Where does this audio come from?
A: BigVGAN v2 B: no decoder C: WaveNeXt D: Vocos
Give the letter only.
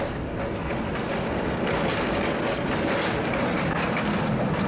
B